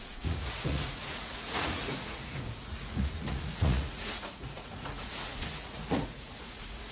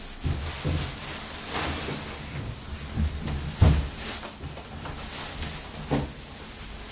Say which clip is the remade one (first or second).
first